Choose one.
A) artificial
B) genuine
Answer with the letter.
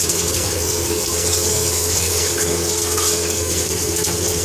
A